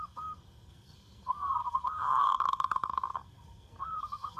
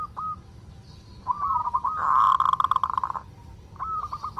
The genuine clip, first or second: second